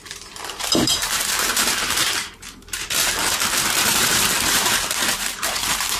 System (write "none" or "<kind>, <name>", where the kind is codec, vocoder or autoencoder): vocoder, BigVGAN v2